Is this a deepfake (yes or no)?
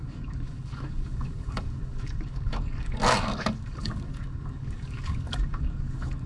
yes